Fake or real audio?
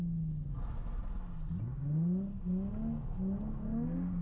real